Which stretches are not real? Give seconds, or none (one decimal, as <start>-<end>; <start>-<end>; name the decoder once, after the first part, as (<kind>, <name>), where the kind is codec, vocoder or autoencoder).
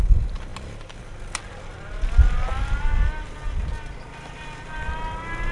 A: none